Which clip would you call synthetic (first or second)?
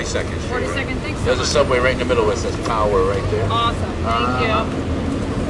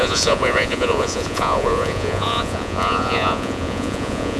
second